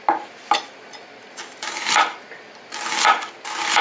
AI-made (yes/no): no